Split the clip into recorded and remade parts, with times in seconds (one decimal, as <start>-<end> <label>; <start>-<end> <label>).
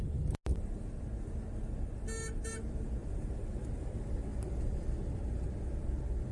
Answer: 0.0-6.3 recorded